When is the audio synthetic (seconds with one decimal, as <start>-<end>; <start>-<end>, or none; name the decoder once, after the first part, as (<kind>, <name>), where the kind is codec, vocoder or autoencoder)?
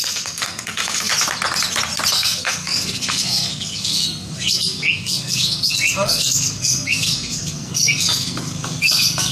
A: 0.0-1.1 (codec, SNAC); 2.1-9.3